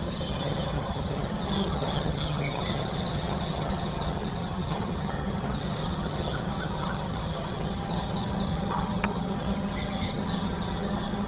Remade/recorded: remade